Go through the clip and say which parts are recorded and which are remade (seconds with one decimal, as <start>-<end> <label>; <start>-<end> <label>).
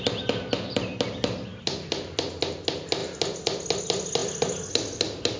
0.0-1.5 recorded; 1.5-2.4 remade; 2.4-5.4 recorded